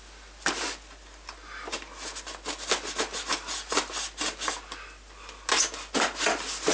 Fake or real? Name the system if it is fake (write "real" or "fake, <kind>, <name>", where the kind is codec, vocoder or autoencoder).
real